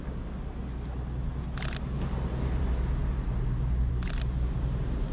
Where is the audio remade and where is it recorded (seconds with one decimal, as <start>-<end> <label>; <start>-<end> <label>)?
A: 0.0-5.1 recorded